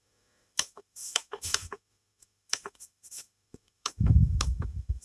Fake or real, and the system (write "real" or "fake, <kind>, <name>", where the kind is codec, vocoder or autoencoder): fake, autoencoder, DAC-VAE